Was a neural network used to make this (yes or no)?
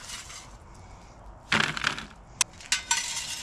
no